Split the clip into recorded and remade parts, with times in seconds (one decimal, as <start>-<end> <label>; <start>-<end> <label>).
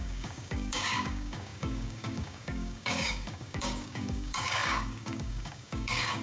0.0-6.2 remade